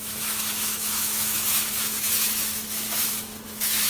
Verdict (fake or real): fake